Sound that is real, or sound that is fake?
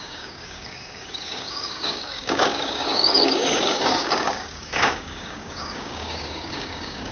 fake